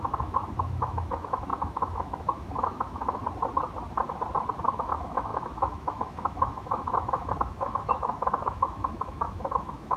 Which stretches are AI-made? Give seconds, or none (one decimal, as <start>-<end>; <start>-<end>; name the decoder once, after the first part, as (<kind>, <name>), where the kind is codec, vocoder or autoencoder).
0.0-3.2 (autoencoder, DAC-VAE); 4.7-10.0